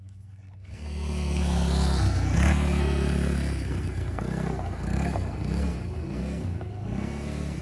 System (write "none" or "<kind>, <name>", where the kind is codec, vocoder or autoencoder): codec, SNAC